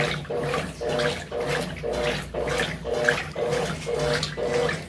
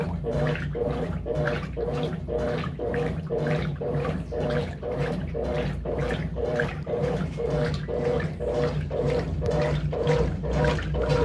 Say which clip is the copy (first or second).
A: second